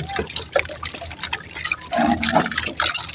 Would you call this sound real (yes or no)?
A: yes